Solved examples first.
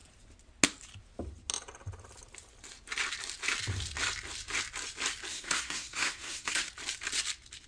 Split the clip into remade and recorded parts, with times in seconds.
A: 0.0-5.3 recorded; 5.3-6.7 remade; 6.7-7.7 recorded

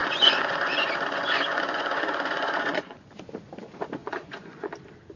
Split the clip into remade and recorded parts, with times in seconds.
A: 0.0-3.1 remade; 3.1-4.0 recorded; 4.0-4.7 remade; 4.7-5.2 recorded